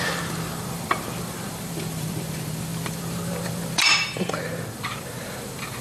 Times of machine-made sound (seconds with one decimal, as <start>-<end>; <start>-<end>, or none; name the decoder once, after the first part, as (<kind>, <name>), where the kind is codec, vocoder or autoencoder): 0.0-5.8 (vocoder, BigVGAN v2)